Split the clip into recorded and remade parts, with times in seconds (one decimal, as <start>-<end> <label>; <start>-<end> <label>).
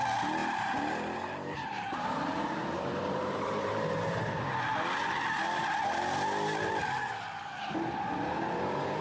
0.0-0.4 recorded; 0.4-4.4 remade; 4.4-9.0 recorded